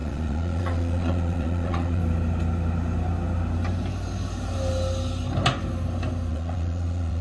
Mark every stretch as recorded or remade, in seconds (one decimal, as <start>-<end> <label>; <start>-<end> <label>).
0.0-2.0 remade; 2.0-6.3 recorded; 6.3-7.2 remade